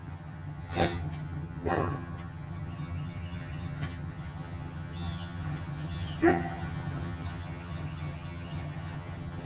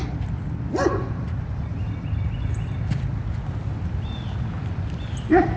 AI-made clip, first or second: first